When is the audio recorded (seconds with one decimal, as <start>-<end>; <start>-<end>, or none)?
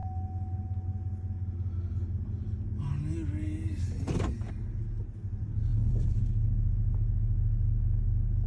0.0-5.7; 6.2-8.5